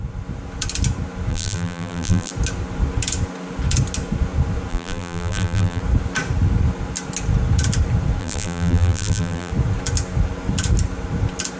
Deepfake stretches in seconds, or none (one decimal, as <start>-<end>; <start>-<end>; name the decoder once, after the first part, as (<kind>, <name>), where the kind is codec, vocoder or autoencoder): 1.3-2.3 (vocoder, BigVGAN v2); 4.7-5.8; 8.2-9.5